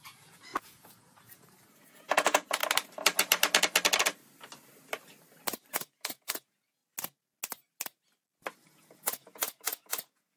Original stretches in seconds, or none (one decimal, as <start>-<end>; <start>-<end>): 2.6-5.7; 6.8-8.7